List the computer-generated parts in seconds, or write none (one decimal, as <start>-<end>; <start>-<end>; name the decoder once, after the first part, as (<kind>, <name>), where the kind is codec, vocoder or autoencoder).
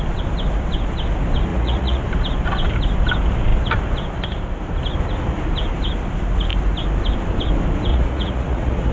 1.5-2.0 (vocoder, Vocos); 7.9-8.9